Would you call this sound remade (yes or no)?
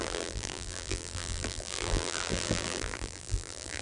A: yes